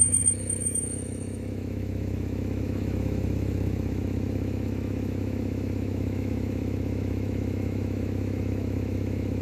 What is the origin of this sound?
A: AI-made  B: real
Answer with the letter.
A